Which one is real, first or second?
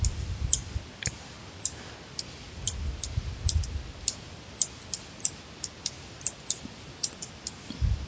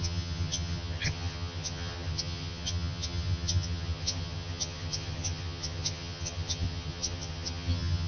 first